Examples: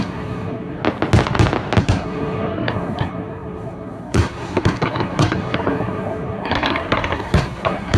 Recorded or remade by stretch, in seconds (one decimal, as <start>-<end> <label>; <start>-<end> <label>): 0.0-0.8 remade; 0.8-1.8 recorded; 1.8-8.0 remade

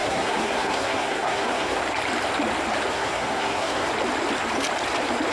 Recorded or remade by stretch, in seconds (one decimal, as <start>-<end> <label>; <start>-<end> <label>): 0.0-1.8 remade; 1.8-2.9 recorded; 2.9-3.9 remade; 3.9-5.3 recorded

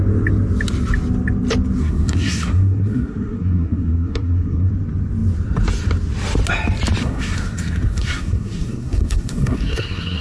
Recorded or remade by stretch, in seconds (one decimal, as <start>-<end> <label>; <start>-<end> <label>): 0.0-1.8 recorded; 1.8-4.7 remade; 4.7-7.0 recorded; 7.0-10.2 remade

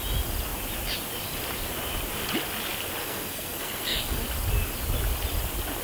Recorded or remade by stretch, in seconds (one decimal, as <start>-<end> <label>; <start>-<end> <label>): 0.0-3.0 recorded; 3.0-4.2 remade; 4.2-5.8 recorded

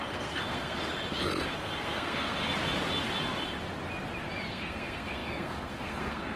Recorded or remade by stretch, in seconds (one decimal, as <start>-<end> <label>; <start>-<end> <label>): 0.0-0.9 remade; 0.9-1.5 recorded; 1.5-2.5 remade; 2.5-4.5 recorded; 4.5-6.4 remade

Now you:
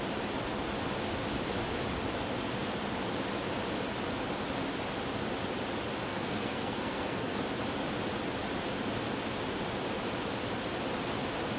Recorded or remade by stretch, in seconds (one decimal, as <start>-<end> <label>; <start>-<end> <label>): 0.0-6.1 recorded; 6.1-7.4 remade; 7.4-11.6 recorded

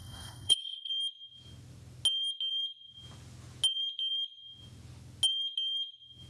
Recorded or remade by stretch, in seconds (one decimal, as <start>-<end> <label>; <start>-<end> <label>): 0.0-0.9 remade; 0.9-6.3 recorded